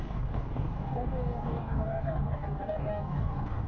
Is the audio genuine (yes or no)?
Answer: no